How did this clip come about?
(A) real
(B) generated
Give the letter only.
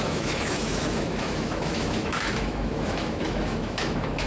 B